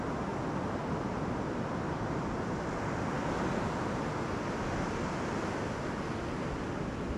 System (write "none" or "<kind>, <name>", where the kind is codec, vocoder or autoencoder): none